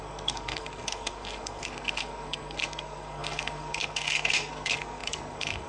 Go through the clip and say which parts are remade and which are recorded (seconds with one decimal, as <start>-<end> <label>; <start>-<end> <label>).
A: 0.0-5.7 remade